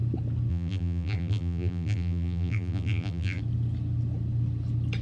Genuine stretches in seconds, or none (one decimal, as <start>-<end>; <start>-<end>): 0.0-0.5; 3.4-5.0